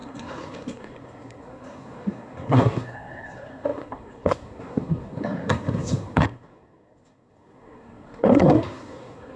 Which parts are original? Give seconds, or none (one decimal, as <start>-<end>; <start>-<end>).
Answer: none